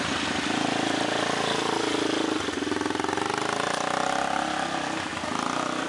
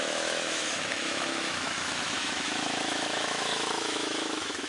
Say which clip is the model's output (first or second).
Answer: second